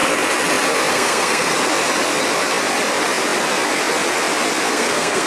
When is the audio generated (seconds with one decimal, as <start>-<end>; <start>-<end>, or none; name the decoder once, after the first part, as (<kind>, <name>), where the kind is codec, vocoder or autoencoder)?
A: 0.9-1.5 (codec, SNAC); 4.7-5.3